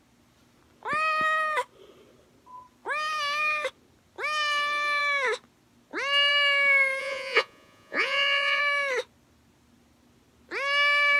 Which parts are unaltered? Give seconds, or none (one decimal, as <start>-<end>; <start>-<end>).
0.0-7.0; 8.6-11.2

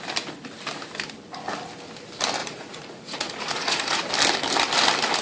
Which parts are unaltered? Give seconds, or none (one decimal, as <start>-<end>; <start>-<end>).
0.0-2.4; 4.1-5.2

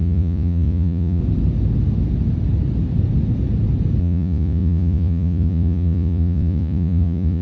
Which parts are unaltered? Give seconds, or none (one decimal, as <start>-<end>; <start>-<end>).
1.2-4.0